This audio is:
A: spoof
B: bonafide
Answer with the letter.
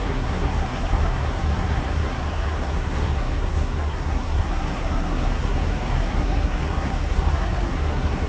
A